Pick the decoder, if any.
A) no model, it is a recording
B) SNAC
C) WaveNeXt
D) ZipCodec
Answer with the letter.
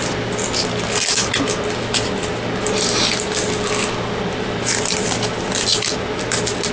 A